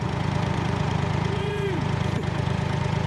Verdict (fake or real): fake